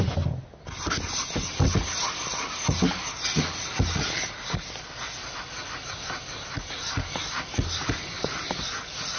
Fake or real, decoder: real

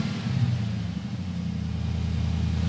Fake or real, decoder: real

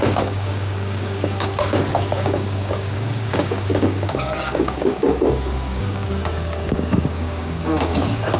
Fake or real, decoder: fake, codec, DAC